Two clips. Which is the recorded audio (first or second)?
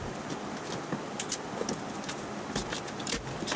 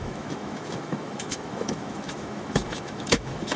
first